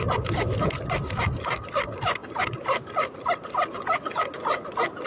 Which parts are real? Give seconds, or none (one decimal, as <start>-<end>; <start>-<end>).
0.0-5.1